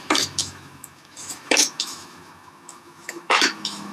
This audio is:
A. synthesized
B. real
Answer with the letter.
A